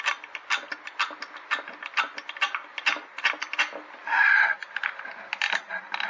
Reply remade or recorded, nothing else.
recorded